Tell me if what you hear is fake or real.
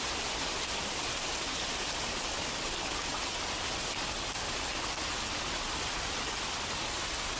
real